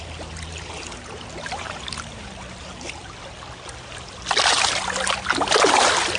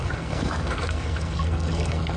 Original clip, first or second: first